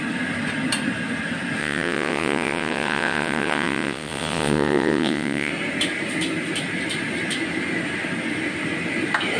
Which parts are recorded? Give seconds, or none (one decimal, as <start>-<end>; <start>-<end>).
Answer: 0.0-1.6; 5.5-9.4